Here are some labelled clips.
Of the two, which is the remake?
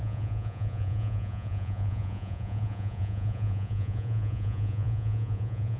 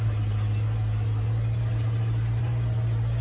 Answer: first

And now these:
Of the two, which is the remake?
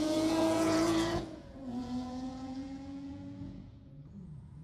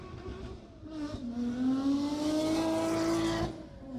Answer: first